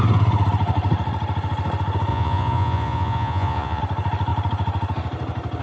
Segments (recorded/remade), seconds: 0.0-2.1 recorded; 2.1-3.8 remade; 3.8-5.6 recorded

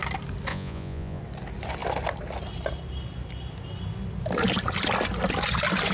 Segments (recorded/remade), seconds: 0.0-0.5 recorded; 0.5-1.2 remade; 1.2-5.9 recorded

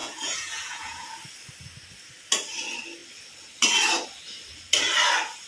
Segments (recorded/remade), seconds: 0.0-1.1 remade; 1.1-5.5 recorded

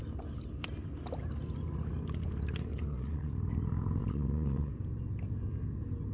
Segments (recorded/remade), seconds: 0.0-2.7 recorded; 2.7-3.3 remade; 3.3-4.0 recorded; 4.0-4.7 remade; 4.7-6.1 recorded

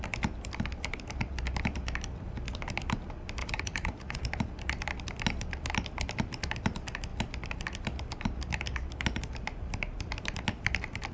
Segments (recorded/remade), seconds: 0.0-3.4 recorded; 3.4-4.2 remade; 4.2-11.1 recorded

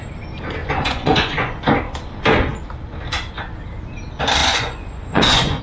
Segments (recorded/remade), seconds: 0.0-0.6 recorded; 0.6-1.6 remade; 1.6-4.4 recorded; 4.4-5.6 remade

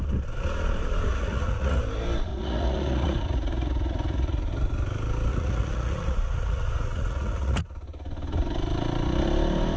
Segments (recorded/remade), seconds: 0.0-1.1 recorded; 1.1-1.8 remade; 1.8-2.3 recorded; 2.3-4.5 remade; 4.5-5.3 recorded; 5.3-7.7 remade; 7.7-9.8 recorded

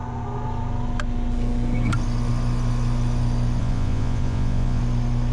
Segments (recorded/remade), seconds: 0.0-3.6 recorded; 3.6-4.8 remade; 4.8-5.3 recorded